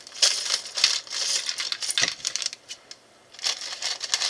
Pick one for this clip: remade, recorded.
recorded